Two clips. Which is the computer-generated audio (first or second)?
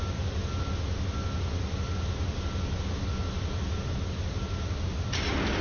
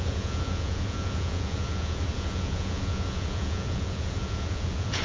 second